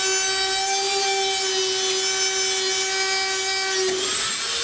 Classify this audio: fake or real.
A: real